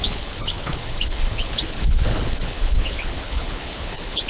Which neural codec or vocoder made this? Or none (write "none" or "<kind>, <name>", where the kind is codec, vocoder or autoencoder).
codec, HILCodec